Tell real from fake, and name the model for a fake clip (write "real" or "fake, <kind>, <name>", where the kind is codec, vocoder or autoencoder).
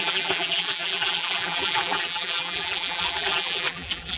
fake, vocoder, BigVGAN v2